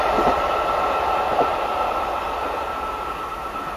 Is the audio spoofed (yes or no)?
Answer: no